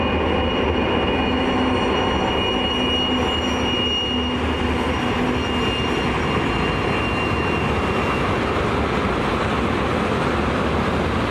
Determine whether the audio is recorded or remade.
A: recorded